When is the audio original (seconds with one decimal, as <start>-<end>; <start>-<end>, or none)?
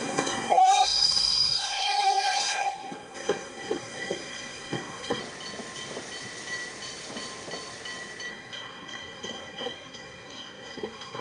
5.2-8.3